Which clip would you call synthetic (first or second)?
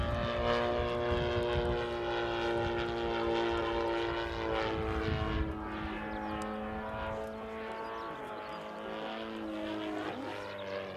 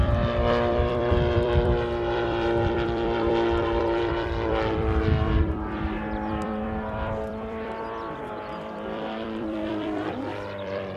second